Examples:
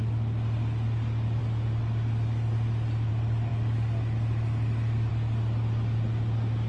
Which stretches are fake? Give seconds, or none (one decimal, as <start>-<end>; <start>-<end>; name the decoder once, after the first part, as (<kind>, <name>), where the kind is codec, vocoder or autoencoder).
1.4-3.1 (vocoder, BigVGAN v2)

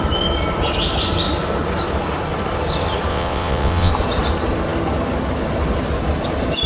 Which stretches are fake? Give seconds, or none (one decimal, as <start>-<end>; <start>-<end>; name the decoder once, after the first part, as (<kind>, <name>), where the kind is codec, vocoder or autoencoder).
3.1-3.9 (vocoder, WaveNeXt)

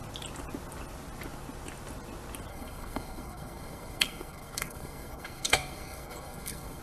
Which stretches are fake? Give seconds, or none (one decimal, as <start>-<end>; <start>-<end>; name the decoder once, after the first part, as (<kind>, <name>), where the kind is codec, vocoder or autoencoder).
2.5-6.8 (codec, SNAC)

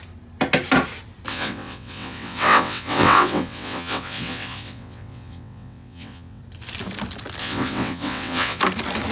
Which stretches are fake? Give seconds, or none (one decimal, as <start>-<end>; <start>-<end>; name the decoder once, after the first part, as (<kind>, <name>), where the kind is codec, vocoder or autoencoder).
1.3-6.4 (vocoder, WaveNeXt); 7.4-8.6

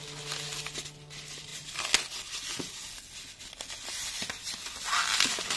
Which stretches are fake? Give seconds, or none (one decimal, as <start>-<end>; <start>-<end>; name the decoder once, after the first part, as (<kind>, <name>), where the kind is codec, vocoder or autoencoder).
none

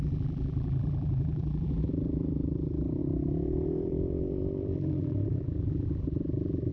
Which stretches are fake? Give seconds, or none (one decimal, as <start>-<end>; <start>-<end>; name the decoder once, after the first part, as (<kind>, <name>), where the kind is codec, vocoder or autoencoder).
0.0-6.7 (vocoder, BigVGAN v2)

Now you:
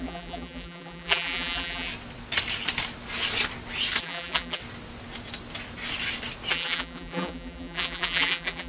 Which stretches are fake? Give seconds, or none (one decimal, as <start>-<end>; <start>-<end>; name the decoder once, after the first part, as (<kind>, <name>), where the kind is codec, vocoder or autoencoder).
0.0-1.9 (vocoder, BigVGAN v2); 4.0-4.6; 6.5-8.7

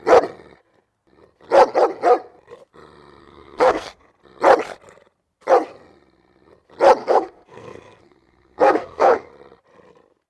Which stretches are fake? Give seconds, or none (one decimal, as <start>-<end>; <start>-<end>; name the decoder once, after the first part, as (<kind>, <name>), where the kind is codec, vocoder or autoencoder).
3.2-4.1 (codec, SNAC); 7.0-9.3